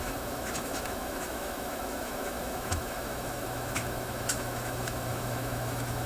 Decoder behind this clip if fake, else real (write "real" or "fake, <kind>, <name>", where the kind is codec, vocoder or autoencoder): fake, autoencoder, DAC-VAE